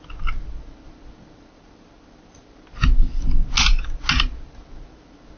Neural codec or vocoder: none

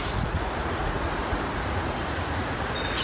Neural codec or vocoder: vocoder, Vocos